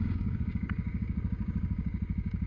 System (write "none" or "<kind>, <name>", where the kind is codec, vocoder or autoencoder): codec, DAC